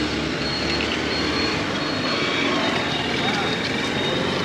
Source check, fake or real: real